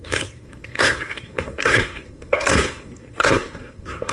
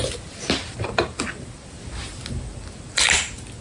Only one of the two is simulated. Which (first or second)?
first